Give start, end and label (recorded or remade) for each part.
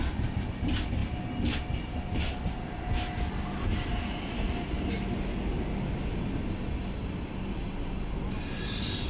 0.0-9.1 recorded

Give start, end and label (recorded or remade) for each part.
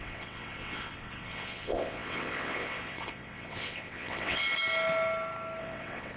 0.0-4.4 remade; 4.4-5.6 recorded; 5.6-6.2 remade